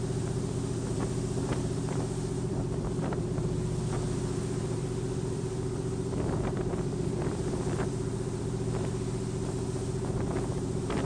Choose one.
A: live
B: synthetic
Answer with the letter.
B